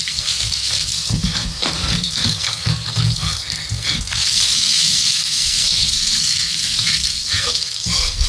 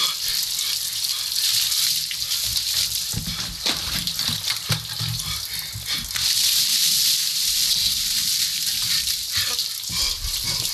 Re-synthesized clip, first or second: first